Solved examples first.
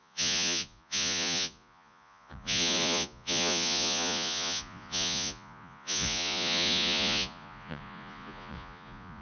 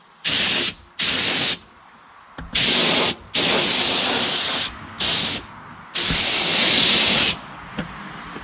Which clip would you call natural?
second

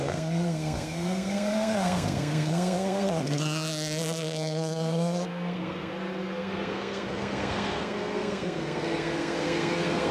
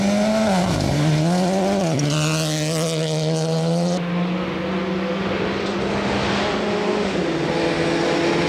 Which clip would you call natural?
second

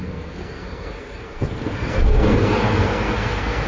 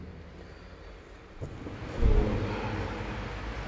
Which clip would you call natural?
second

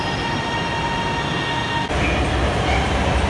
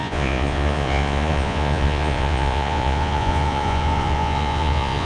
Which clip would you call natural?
first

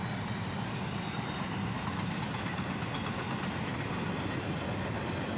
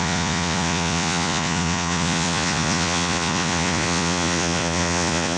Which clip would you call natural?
first